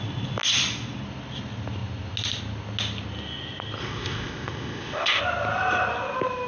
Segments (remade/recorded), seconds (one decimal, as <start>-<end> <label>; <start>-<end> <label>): 0.0-3.8 recorded; 3.8-5.2 remade; 5.2-6.5 recorded